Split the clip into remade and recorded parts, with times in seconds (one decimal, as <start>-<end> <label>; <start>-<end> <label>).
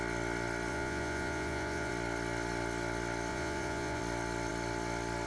0.0-0.7 recorded; 0.7-1.9 remade; 1.9-3.3 recorded; 3.3-4.0 remade; 4.0-5.3 recorded